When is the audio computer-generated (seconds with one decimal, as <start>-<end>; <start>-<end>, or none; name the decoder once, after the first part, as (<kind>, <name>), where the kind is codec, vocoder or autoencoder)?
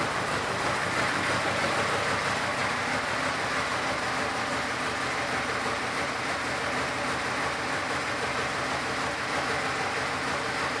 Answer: none